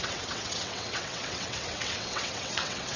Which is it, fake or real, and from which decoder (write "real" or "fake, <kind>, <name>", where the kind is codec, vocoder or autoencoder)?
fake, vocoder, WaveNeXt